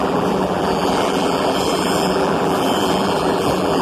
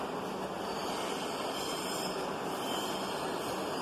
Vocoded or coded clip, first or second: first